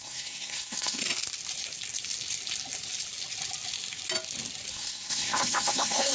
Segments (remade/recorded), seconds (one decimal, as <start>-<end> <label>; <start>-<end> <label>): 0.0-1.0 remade; 1.0-4.7 recorded; 4.7-6.1 remade